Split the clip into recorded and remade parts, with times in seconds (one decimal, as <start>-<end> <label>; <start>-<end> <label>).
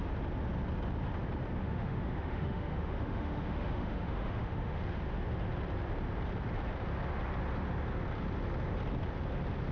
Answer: 0.0-1.6 recorded; 1.6-4.8 remade; 4.8-9.7 recorded